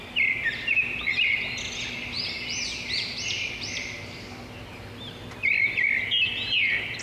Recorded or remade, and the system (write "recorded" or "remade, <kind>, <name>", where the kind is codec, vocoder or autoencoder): recorded